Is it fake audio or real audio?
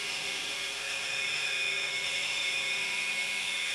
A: fake